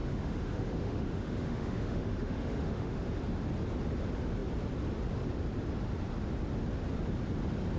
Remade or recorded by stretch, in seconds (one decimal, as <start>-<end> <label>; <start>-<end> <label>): 0.0-3.1 remade; 3.1-7.8 recorded